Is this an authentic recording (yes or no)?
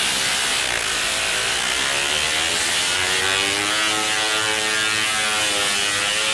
yes